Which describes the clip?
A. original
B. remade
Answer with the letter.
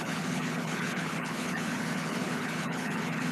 B